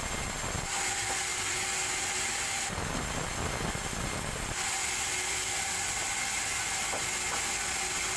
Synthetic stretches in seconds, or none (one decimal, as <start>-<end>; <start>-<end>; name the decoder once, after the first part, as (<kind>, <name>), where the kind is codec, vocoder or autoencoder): none